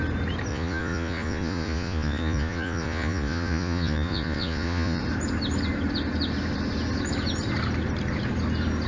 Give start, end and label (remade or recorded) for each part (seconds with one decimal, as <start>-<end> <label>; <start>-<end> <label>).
0.0-0.5 recorded; 0.5-5.0 remade; 5.0-8.9 recorded